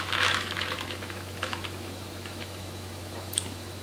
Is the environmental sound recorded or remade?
remade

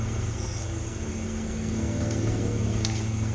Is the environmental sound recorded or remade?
remade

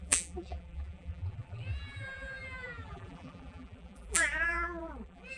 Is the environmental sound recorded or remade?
remade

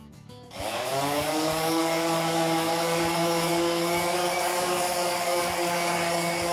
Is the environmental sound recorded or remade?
remade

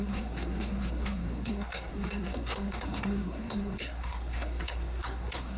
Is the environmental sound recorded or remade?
remade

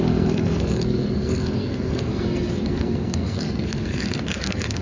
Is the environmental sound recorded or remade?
remade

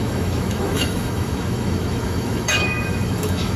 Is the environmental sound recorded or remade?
remade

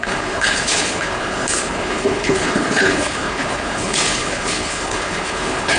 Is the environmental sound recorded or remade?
remade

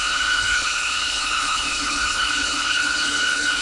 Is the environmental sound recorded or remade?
remade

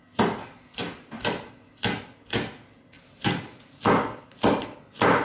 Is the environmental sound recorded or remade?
recorded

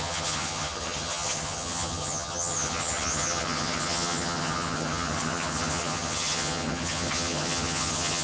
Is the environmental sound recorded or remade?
remade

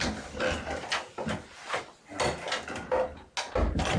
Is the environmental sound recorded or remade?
recorded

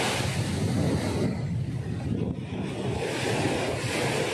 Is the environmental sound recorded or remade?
recorded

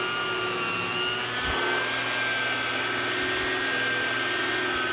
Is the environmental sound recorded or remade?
recorded